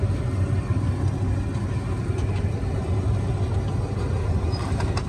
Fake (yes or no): no